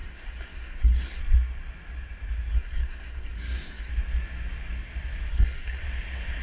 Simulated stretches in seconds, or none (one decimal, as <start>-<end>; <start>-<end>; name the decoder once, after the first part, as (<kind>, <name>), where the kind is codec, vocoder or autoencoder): 0.0-1.2 (codec, SNAC); 2.5-3.9; 5.3-5.8